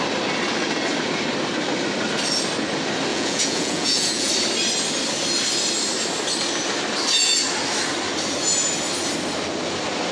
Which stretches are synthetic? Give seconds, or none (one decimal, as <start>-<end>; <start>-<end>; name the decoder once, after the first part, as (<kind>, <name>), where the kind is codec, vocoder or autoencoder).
3.1-4.3 (vocoder, Vocos)